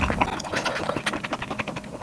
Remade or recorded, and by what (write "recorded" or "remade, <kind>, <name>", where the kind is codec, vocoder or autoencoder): recorded